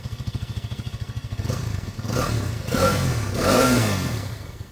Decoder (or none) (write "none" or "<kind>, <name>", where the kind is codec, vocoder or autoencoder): codec, SNAC